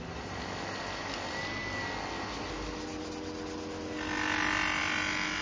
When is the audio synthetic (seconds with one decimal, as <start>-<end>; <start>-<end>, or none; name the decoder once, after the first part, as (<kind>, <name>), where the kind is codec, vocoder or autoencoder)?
none